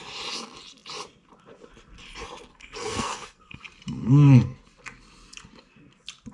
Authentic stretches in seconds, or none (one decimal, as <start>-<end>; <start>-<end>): 0.0-2.5; 3.6-4.0; 4.6-6.3